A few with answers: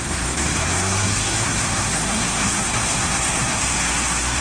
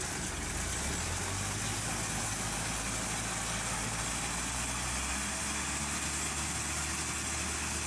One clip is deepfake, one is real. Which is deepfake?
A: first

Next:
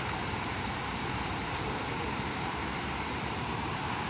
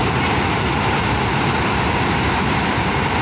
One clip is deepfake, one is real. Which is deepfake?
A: first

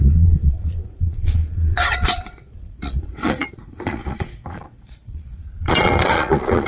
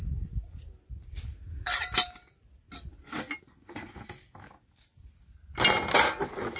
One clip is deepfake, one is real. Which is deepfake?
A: first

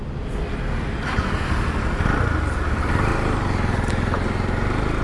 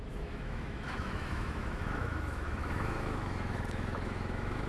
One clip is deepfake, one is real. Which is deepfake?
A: second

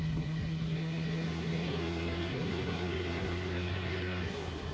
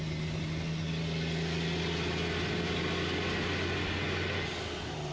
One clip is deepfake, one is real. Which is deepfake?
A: first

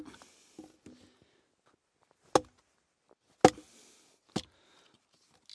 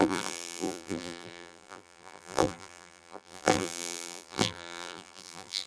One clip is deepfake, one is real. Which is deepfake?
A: second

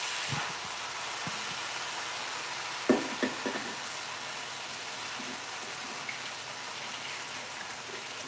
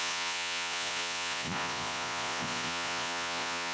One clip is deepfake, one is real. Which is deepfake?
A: second